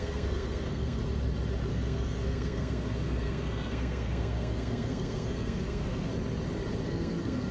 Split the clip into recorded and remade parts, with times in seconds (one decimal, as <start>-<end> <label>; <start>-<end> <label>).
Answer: 0.0-1.0 remade; 1.0-1.7 recorded; 1.7-6.1 remade; 6.1-6.9 recorded; 6.9-7.5 remade